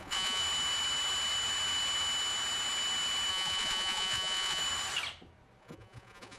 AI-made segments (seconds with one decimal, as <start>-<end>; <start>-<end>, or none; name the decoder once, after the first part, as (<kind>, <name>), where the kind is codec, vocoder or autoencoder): 0.0-0.4 (vocoder, Vocos); 3.3-4.6; 5.6-6.4